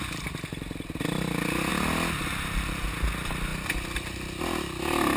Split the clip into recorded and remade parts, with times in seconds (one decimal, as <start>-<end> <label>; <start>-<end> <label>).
0.0-5.2 recorded